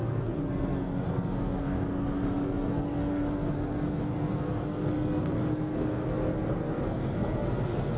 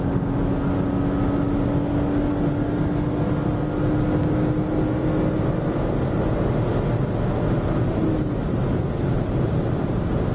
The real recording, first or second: second